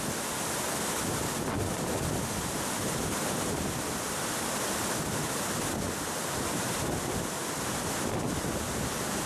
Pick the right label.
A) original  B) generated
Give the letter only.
A